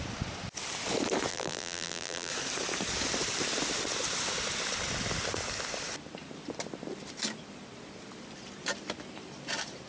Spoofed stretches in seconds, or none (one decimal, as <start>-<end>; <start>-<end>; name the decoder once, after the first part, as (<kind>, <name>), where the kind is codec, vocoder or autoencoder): 1.3-2.3 (vocoder, BigVGAN v2)